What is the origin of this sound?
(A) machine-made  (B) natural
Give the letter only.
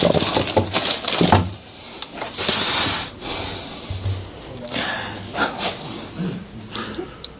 B